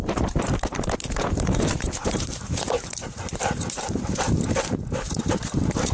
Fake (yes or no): yes